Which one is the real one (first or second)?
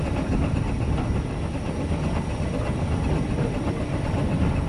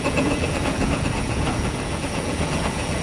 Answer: first